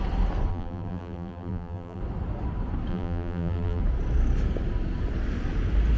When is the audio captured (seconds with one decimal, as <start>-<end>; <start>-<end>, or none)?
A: 0.0-0.5; 2.0-2.9; 3.8-6.0